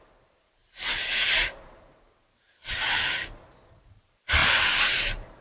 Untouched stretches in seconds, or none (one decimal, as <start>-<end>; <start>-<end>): none